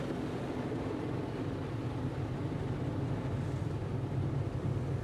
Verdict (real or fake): real